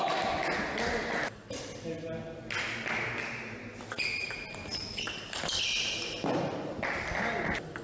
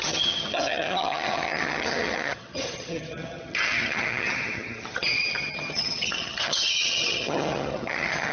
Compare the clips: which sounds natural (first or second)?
first